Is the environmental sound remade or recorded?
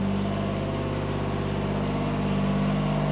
recorded